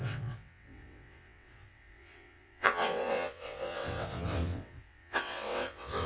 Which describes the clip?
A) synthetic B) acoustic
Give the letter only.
A